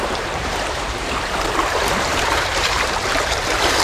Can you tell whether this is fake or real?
fake